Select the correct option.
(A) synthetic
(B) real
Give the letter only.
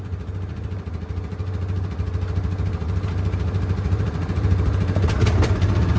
A